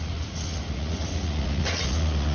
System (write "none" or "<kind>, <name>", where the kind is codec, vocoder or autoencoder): vocoder, Vocos